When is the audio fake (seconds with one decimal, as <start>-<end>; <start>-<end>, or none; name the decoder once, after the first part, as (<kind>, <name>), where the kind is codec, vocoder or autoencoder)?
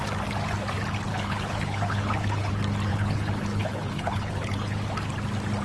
1.1-2.5 (codec, HILCodec); 2.9-4.8